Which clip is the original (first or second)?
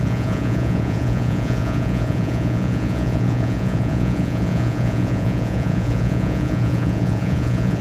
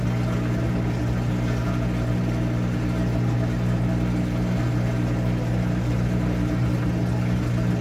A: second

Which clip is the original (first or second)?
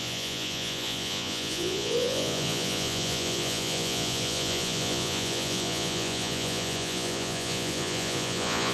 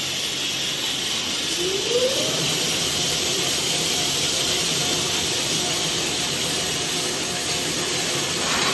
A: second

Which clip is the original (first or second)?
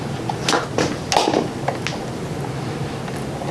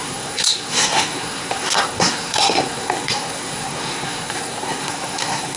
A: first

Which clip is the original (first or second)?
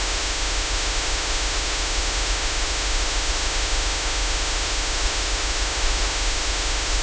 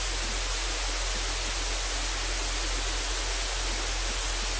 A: second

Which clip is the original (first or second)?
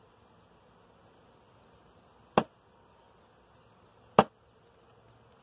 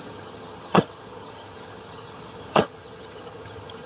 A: first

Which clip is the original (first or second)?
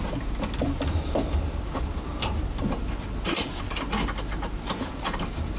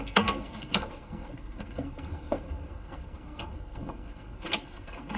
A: first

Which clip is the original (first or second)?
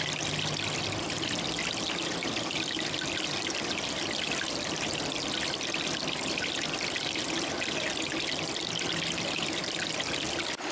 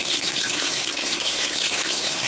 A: first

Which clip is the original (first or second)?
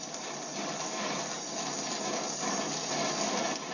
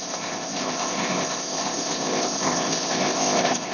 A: first